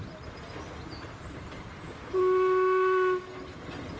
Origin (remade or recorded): recorded